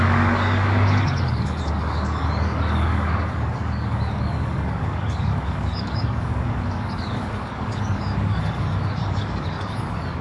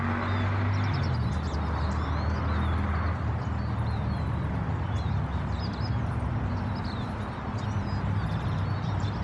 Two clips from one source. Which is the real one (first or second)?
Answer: second